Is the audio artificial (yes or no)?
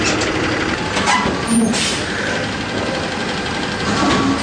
no